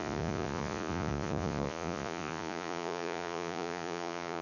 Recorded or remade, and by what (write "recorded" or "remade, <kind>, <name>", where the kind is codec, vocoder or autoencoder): remade, vocoder, Vocos